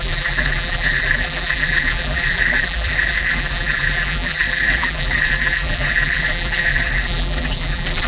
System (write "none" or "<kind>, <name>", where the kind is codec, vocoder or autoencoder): vocoder, BigVGAN v2